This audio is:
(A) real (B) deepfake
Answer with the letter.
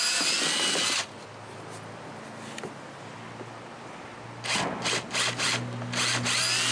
A